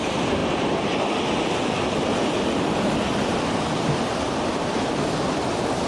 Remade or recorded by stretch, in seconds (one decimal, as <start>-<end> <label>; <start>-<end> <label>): 0.0-5.9 recorded